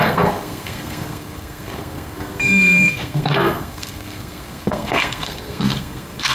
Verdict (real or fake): fake